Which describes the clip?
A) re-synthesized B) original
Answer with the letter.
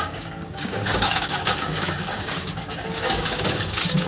A